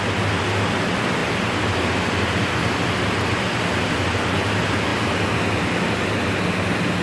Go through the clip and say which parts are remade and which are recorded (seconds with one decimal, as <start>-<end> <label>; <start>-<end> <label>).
0.0-7.0 recorded